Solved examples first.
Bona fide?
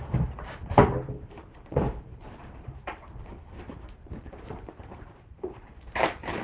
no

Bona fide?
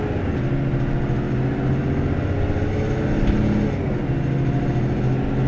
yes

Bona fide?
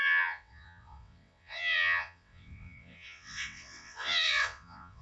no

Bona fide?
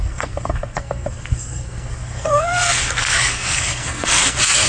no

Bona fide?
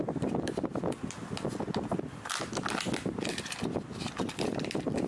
yes